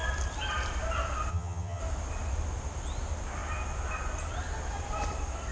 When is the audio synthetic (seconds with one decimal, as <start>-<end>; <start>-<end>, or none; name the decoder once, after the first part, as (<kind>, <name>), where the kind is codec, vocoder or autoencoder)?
1.3-1.8 (vocoder, HiFi-GAN)